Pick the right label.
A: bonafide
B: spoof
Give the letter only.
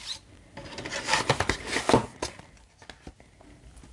A